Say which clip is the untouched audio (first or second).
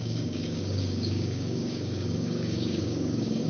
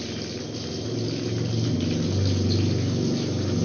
second